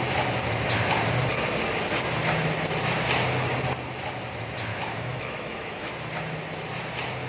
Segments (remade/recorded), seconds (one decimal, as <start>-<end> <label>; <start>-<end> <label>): 0.0-4.7 recorded; 4.7-5.9 remade; 5.9-7.3 recorded